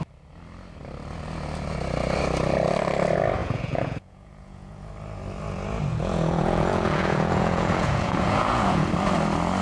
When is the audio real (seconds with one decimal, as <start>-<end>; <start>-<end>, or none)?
0.0-3.4; 4.9-5.9; 8.9-9.6